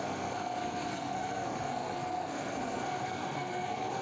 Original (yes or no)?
no